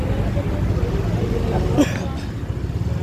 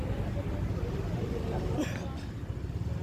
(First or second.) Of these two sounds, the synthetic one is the second